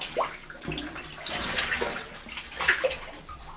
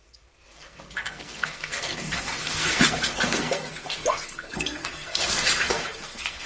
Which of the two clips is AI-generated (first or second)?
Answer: second